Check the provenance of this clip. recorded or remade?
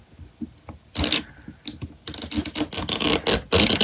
recorded